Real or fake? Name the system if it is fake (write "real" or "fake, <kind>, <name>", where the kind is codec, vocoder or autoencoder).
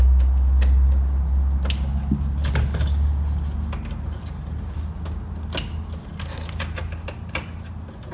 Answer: real